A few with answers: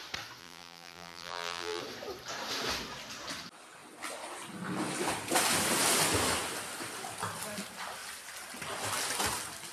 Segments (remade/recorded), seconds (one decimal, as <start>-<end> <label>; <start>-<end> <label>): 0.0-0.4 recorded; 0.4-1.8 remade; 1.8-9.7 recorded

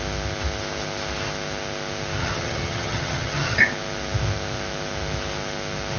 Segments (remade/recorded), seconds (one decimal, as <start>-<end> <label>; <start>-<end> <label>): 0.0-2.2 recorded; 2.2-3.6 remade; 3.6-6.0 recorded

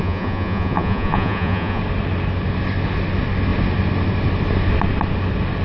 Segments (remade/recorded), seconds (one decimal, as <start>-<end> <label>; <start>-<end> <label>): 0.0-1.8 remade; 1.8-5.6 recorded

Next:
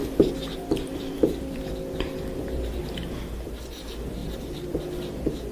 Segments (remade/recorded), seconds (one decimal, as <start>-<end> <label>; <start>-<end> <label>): 0.0-2.8 remade; 2.8-4.2 recorded; 4.2-4.8 remade; 4.8-5.5 recorded

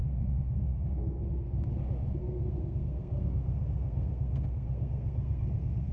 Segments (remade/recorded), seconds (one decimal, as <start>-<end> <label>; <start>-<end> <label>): 0.0-1.2 remade; 1.2-2.2 recorded; 2.2-5.9 remade

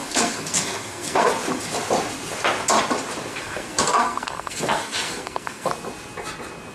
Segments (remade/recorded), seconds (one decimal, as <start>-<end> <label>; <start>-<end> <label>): 0.0-1.3 remade; 1.3-3.3 recorded; 3.3-5.7 remade; 5.7-6.7 recorded

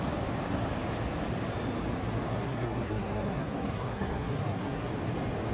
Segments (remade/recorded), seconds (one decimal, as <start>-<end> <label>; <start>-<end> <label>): 0.0-2.3 recorded; 2.3-4.9 remade; 4.9-5.5 recorded